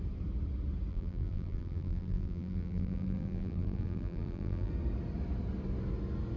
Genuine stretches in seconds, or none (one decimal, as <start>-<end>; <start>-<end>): 0.0-0.9; 4.7-6.4